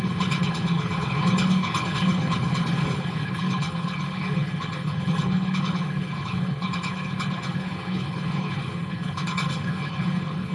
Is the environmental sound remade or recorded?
remade